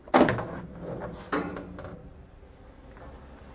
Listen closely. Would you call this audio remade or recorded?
recorded